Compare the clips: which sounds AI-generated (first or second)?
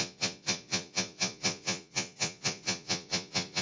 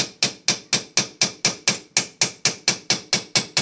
first